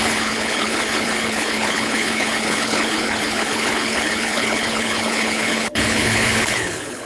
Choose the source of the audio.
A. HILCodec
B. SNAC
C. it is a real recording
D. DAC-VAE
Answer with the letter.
A